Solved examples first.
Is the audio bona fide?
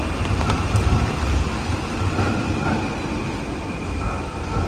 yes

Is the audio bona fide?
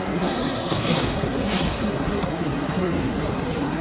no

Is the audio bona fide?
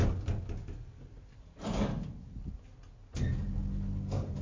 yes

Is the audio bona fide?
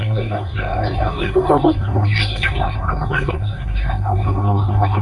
no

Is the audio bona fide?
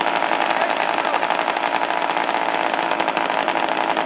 yes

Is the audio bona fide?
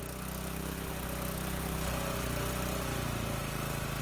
yes